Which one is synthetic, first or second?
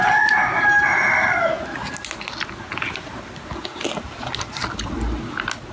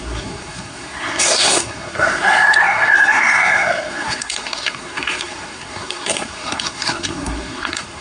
second